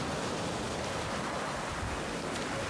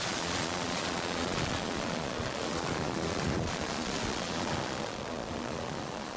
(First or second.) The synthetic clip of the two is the second